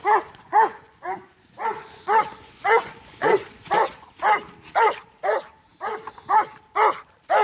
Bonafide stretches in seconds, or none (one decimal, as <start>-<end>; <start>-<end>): 4.2-7.4